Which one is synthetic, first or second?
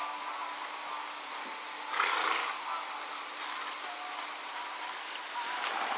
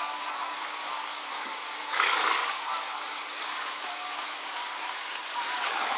second